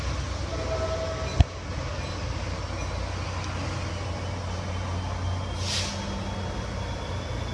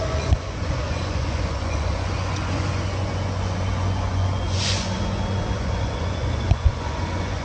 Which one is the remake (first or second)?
second